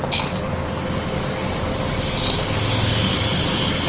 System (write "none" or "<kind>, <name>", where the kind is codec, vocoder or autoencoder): none